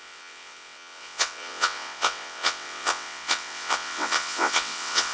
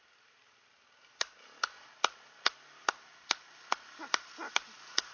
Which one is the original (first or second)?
second